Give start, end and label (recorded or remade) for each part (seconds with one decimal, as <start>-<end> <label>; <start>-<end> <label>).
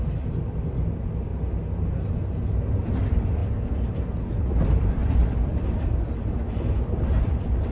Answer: 0.0-1.3 remade; 1.3-2.7 recorded; 2.7-3.4 remade; 3.4-4.3 recorded; 4.3-7.7 remade